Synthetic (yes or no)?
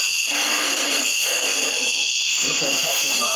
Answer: yes